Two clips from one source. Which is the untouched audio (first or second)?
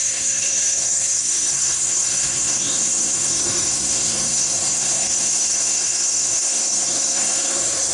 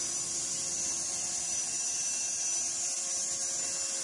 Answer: second